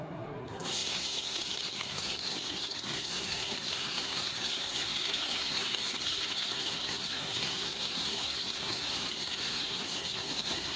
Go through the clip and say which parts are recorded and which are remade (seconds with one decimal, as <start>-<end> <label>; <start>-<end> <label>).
0.0-10.8 remade